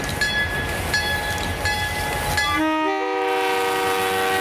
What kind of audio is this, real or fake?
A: real